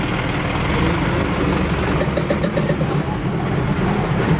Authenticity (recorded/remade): recorded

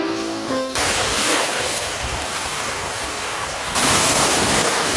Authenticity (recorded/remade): remade